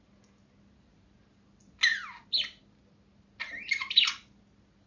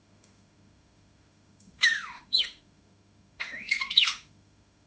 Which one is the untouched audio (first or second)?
first